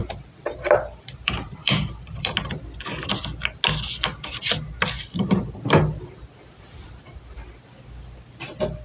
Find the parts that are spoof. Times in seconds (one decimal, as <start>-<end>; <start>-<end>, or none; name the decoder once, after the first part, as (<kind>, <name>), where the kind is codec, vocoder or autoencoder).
0.0-2.3 (vocoder, BigVGAN v2)